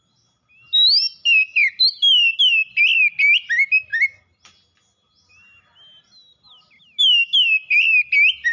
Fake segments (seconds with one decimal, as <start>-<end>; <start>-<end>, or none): none